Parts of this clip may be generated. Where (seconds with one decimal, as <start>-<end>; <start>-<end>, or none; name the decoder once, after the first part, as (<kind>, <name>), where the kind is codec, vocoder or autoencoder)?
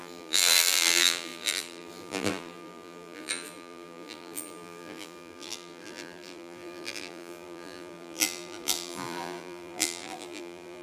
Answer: 0.0-10.8 (vocoder, BigVGAN v2)